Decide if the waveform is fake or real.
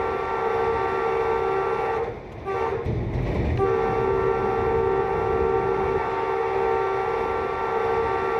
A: real